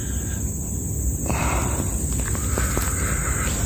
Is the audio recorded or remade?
recorded